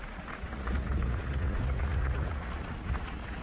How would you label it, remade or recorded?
remade